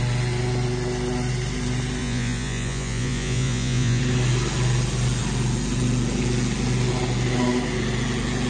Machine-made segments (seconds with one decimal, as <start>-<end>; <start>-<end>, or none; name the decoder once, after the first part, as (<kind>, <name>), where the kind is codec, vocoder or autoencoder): 2.0-4.0 (vocoder, Vocos)